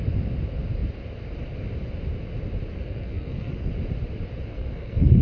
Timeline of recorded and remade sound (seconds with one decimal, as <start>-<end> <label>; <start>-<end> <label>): 0.0-2.7 recorded; 2.7-3.7 remade; 3.7-4.5 recorded; 4.5-5.2 remade